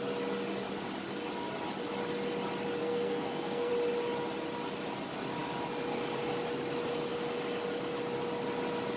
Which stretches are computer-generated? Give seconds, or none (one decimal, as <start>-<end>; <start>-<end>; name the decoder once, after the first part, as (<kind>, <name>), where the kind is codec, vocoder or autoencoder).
2.8-3.7 (codec, SNAC)